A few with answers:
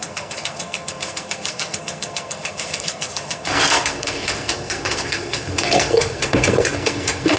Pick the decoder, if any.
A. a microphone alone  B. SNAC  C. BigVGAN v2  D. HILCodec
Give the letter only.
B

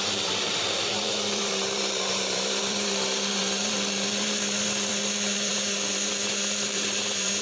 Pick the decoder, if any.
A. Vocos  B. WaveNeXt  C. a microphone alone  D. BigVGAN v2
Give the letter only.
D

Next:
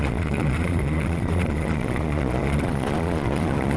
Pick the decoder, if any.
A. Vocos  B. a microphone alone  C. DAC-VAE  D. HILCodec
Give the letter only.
A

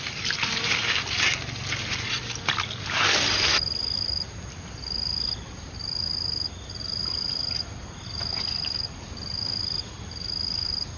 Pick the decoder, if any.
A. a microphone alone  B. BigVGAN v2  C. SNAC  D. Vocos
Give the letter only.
A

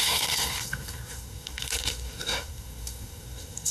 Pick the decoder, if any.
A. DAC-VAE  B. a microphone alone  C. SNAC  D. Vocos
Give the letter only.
C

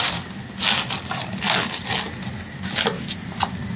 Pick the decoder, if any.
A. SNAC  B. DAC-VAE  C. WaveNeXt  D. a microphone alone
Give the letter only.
D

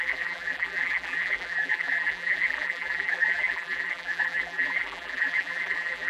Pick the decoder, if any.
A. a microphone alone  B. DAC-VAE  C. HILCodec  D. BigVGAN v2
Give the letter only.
D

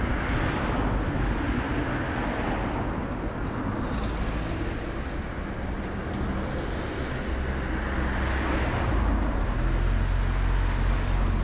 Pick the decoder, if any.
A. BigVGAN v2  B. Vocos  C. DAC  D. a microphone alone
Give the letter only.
D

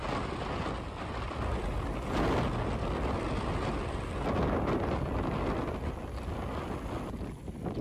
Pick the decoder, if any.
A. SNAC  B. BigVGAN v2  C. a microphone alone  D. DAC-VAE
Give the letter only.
C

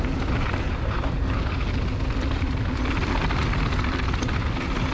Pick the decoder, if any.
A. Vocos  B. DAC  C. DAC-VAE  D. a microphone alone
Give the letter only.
D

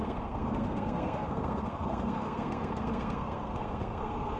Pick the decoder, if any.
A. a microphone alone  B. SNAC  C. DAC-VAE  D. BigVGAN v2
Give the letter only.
B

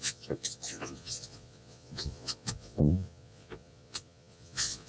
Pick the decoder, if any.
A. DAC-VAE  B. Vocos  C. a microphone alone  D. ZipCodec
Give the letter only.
B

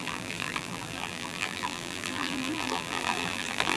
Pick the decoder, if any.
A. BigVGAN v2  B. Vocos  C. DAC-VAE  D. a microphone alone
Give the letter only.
A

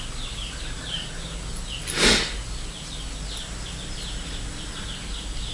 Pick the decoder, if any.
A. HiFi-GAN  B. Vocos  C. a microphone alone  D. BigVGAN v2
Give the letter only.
C